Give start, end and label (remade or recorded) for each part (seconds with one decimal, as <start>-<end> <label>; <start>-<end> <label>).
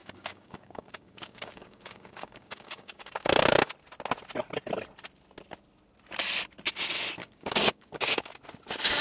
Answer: 0.0-3.7 remade; 3.7-7.2 recorded; 7.2-8.3 remade; 8.3-9.0 recorded